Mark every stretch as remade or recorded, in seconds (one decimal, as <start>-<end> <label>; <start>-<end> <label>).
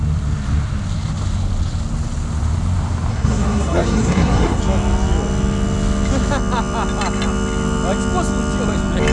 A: 0.0-3.1 recorded; 3.1-4.6 remade; 4.6-9.1 recorded